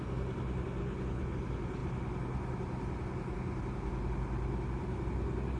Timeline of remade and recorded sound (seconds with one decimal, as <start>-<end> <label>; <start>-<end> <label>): 0.0-0.8 recorded; 0.8-1.3 remade; 1.3-5.6 recorded